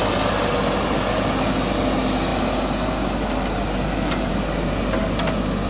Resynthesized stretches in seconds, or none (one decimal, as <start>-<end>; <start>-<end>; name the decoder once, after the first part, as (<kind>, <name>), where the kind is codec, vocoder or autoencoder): none